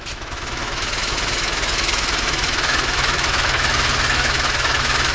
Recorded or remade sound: remade